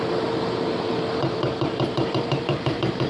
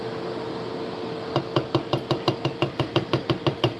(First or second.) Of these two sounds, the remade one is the first